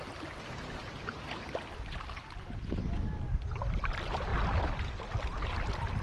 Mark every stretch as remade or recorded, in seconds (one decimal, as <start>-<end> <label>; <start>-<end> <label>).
0.0-6.0 recorded